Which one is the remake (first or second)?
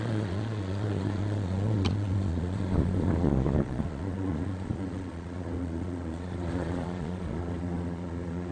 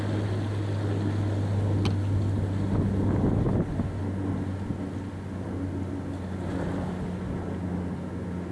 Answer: first